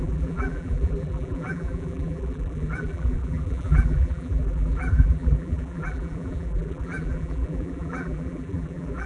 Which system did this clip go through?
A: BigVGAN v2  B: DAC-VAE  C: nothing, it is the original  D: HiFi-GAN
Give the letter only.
A